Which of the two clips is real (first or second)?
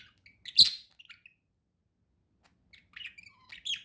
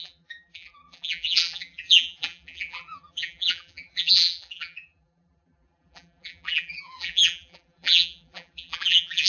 first